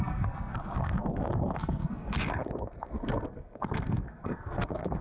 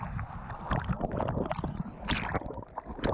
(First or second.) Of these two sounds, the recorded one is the second